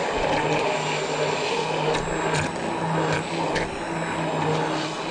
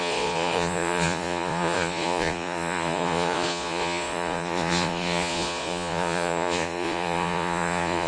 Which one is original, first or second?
first